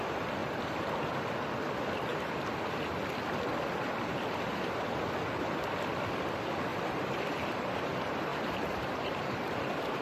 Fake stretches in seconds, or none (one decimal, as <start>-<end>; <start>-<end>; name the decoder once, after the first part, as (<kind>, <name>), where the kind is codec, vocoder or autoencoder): 0.4-0.9 (vocoder, BigVGAN v2); 6.7-7.8; 8.3-9.2